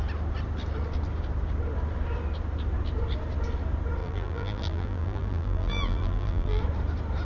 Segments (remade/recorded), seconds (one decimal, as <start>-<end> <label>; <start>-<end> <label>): 0.0-4.0 recorded; 4.0-6.6 remade; 6.6-7.2 recorded